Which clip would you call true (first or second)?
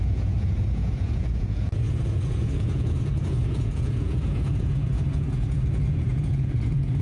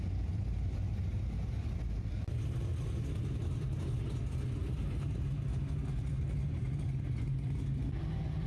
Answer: second